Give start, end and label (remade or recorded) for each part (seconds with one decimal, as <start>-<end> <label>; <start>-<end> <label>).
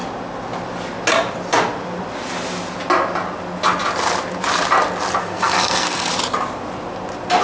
0.0-5.2 recorded; 5.2-6.1 remade; 6.1-7.4 recorded